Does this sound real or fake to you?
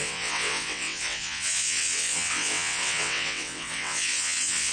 fake